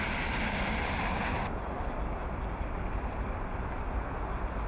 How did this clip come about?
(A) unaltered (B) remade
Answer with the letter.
A